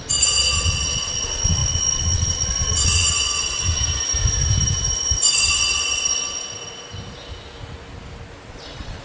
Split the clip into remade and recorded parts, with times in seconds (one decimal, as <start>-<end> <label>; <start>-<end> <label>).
0.0-3.8 remade; 3.8-5.2 recorded; 5.2-6.2 remade; 6.2-8.5 recorded; 8.5-9.0 remade